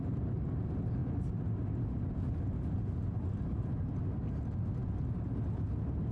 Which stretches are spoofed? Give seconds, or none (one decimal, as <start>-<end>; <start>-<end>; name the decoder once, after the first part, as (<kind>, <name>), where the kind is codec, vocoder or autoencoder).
none